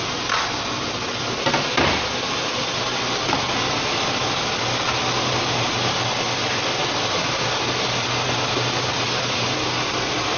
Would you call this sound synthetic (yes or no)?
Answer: no